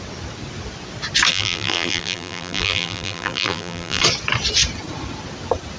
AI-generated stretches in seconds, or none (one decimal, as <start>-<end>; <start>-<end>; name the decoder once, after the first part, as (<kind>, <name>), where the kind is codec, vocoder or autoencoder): 1.3-4.0 (vocoder, BigVGAN v2)